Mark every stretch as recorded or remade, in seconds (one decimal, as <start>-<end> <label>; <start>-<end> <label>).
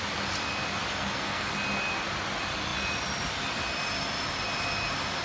0.0-0.9 recorded; 0.9-1.5 remade; 1.5-5.2 recorded